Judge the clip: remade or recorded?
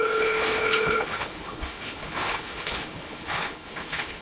remade